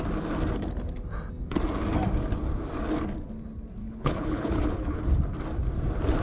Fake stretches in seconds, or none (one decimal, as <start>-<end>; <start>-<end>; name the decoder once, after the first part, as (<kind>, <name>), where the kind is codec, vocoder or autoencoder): 3.8-5.0 (codec, HILCodec)